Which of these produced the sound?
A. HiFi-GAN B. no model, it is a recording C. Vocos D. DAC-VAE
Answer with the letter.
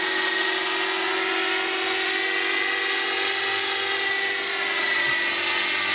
B